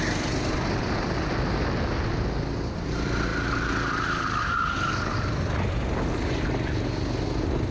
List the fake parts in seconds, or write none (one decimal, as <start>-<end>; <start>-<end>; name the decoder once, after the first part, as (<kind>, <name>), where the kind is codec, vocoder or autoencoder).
none